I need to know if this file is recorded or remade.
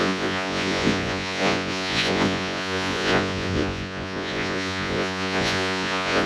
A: remade